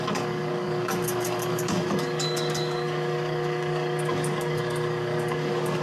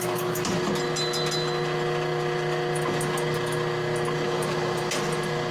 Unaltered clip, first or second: second